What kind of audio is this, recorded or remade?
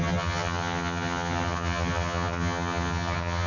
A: remade